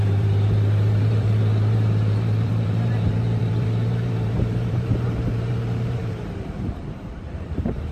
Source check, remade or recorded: remade